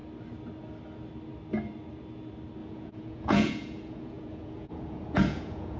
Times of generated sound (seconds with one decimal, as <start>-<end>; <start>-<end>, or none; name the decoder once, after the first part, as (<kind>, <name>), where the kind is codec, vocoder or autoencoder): 2.6-5.8 (vocoder, Vocos)